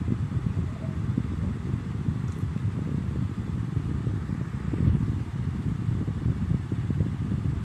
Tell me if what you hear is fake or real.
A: real